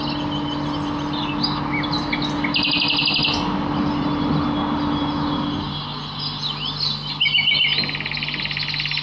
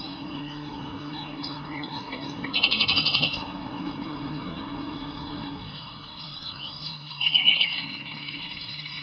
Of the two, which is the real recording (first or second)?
first